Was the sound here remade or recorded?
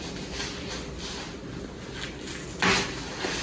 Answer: recorded